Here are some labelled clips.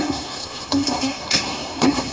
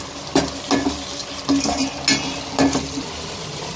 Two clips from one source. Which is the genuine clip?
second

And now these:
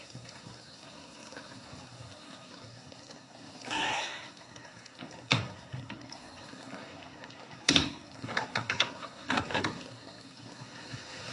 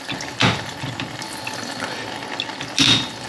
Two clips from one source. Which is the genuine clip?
second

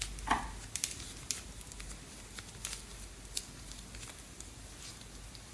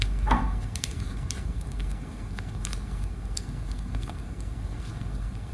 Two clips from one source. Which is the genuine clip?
first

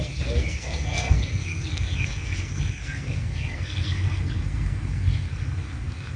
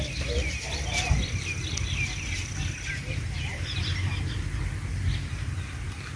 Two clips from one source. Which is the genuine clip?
second